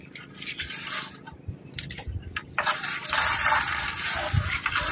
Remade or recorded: remade